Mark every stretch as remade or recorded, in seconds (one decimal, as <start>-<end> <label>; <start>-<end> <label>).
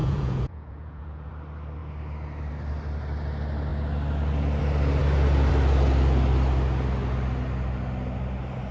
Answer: 0.0-1.3 remade; 1.3-8.7 recorded